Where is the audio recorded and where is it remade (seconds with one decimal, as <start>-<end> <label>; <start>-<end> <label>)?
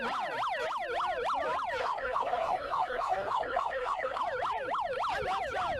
0.0-1.8 recorded; 1.8-4.2 remade; 4.2-5.8 recorded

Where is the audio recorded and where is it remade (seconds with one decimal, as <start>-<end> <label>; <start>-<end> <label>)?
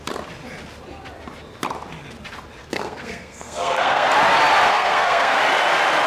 0.0-2.6 recorded; 2.6-4.1 remade; 4.1-4.7 recorded; 4.7-5.4 remade; 5.4-6.1 recorded